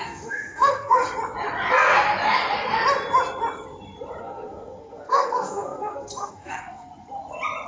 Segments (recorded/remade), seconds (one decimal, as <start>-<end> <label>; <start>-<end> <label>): 0.0-1.0 remade; 1.0-4.2 recorded; 4.2-6.9 remade; 6.9-7.7 recorded